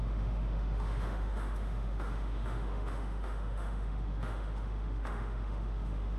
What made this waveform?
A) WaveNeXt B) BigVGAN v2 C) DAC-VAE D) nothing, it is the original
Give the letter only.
C